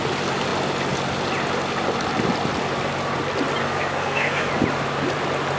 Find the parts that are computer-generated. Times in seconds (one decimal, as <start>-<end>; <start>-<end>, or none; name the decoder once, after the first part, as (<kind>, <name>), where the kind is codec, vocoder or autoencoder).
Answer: 3.6-4.5 (codec, SNAC)